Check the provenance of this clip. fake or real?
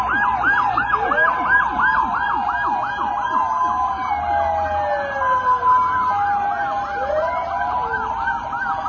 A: real